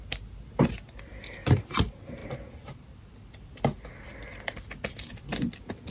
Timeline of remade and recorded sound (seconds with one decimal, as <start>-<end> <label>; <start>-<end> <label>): 0.0-2.2 recorded; 2.2-3.6 remade; 3.6-5.9 recorded